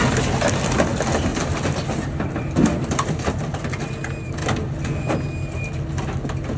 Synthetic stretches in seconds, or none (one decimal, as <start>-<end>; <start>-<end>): 1.3-3.5